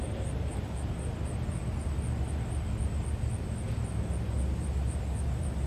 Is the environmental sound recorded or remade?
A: recorded